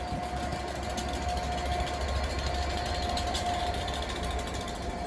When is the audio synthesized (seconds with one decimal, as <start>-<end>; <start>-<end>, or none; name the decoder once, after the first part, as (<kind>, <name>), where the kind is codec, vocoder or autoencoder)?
none